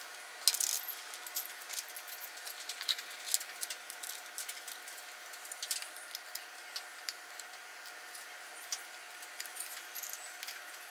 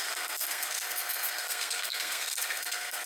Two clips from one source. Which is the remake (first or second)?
second